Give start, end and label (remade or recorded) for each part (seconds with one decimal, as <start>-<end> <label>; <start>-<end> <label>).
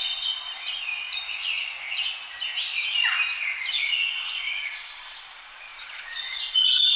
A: 0.0-0.9 remade; 0.9-3.7 recorded; 3.7-7.0 remade